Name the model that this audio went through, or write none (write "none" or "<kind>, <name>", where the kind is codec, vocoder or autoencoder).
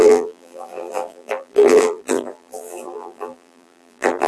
vocoder, BigVGAN v2